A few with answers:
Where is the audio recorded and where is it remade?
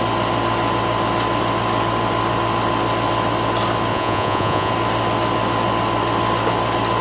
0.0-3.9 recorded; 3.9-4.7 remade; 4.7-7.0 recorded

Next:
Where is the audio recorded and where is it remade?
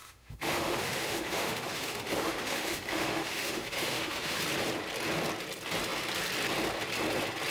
0.0-4.4 remade; 4.4-7.5 recorded